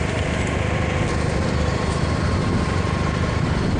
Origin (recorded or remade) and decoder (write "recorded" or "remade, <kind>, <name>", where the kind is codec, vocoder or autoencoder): recorded